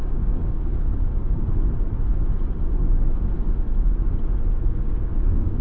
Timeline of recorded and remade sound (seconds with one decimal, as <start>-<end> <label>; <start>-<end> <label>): 0.0-1.2 remade; 1.2-4.6 recorded; 4.6-5.6 remade